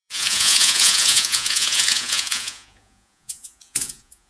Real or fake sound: fake